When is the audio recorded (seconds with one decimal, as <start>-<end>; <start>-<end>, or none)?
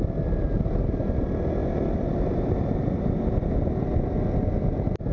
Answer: 0.0-5.1